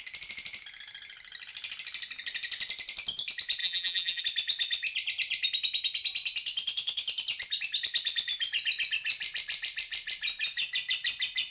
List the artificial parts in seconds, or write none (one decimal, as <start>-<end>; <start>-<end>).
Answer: 3.6-4.2